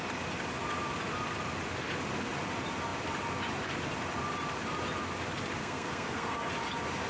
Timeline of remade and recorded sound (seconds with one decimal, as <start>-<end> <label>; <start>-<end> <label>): 0.0-5.6 recorded; 5.6-6.5 remade; 6.5-7.1 recorded